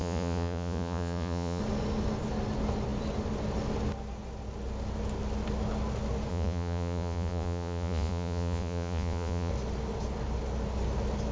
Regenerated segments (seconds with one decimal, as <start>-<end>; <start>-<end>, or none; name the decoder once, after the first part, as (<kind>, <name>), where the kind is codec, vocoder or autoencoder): 0.0-1.6 (vocoder, Vocos); 6.3-9.5